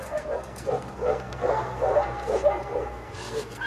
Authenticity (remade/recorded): remade